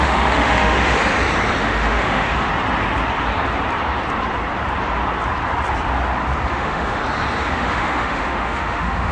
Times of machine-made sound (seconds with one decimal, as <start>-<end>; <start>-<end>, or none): 0.0-1.0; 1.6-2.5; 6.5-7.0; 7.5-9.1